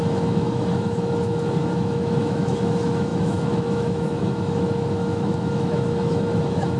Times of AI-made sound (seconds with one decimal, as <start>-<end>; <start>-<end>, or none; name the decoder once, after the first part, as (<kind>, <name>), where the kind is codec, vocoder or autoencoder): 0.0-6.8 (autoencoder, DAC-VAE)